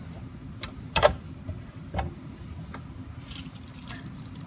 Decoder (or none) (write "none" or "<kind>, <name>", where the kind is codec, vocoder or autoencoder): vocoder, BigVGAN v2